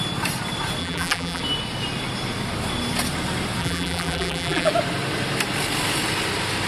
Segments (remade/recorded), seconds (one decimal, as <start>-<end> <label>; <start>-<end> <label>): 0.0-0.8 recorded; 0.8-1.4 remade; 1.4-3.6 recorded; 3.6-4.7 remade; 4.7-6.7 recorded